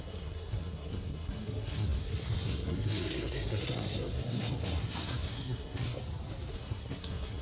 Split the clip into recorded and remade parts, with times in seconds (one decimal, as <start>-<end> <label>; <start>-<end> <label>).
0.0-6.0 remade; 6.0-6.5 recorded; 6.5-7.4 remade